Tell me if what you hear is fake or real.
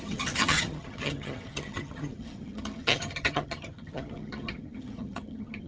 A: fake